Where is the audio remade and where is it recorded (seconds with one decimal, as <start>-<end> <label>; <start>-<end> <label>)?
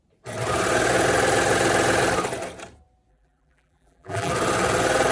0.0-3.1 recorded; 3.1-4.3 remade; 4.3-5.1 recorded